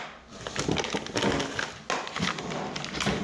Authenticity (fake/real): real